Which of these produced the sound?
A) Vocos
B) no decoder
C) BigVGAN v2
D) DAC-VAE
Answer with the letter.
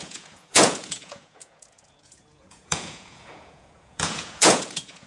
A